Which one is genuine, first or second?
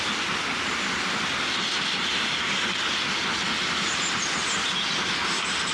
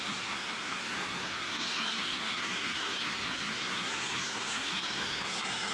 first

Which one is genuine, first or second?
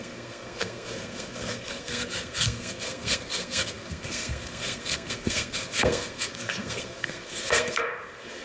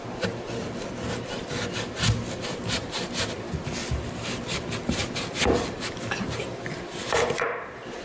second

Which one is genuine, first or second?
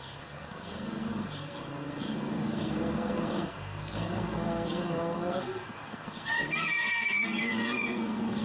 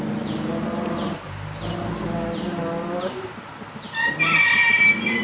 second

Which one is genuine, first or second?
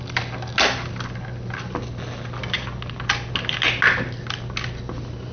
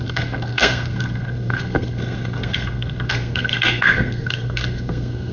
first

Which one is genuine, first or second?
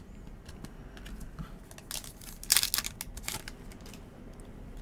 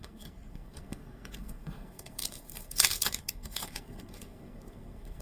first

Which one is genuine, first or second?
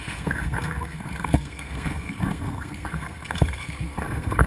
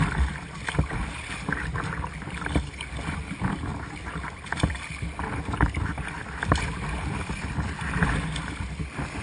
second